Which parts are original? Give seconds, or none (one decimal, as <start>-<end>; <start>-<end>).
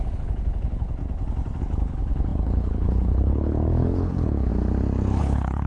1.0-1.6; 4.5-5.2